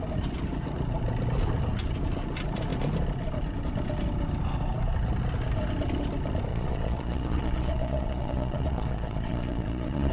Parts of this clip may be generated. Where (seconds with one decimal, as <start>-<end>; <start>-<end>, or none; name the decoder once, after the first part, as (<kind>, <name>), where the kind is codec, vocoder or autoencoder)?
6.5-10.1 (vocoder, Vocos)